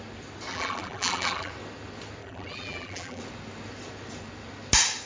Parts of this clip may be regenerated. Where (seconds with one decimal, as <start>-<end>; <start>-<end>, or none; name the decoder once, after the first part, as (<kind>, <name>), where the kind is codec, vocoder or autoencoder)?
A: 0.5-1.5 (vocoder, BigVGAN v2); 2.2-3.2